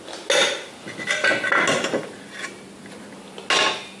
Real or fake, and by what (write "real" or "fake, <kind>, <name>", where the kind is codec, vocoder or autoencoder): real